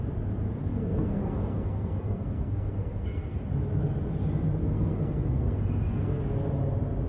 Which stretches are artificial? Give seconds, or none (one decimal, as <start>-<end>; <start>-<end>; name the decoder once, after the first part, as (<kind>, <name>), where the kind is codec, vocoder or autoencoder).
0.7-3.4 (codec, SNAC); 4.6-6.2